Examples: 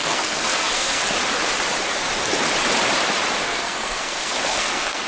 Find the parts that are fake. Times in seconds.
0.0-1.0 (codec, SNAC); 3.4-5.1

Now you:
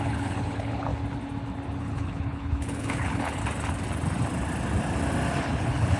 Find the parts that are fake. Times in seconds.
0.0-0.9 (codec, HILCodec); 1.8-3.4; 5.4-6.0